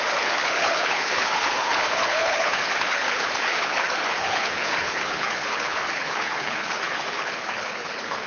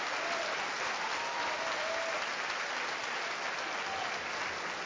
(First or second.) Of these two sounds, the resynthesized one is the first